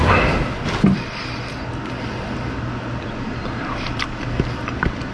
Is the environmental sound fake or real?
real